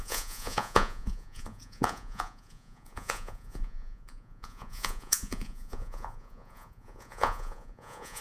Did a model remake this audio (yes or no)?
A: yes